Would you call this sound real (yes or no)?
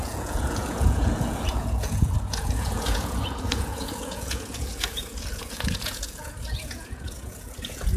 no